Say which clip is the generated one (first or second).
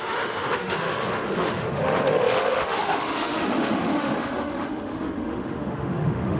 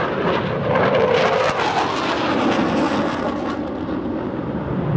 first